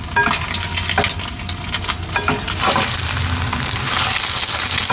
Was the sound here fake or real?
real